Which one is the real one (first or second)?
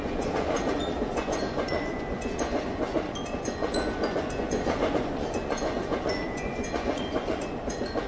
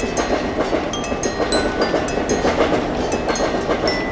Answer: second